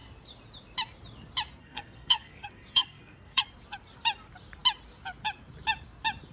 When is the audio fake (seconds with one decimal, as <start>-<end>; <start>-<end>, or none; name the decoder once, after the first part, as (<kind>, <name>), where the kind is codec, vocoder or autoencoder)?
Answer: 1.6-3.4 (codec, SNAC)